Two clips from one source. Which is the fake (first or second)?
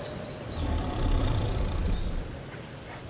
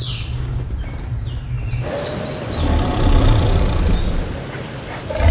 first